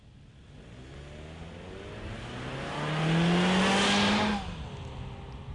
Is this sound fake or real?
real